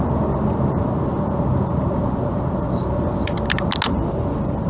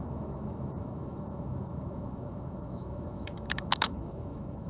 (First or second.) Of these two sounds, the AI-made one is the second